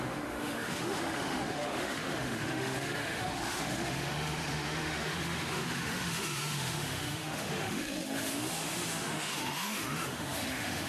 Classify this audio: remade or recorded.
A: remade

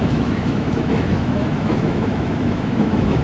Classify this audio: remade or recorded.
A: remade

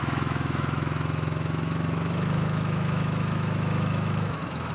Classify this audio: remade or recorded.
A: remade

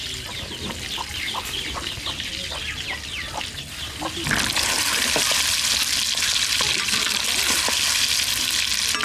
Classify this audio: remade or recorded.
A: recorded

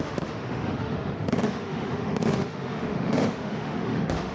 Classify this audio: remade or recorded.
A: remade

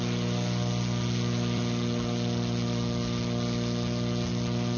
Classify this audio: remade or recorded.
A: recorded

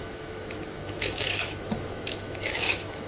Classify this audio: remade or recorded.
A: remade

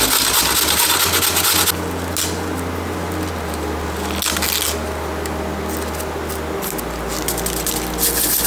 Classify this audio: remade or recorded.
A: recorded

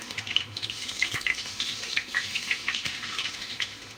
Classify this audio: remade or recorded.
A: remade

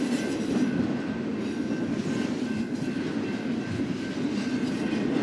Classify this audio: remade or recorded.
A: recorded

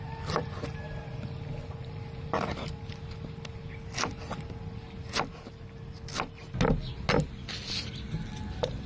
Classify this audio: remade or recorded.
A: recorded